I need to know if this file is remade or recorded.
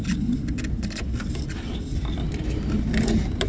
recorded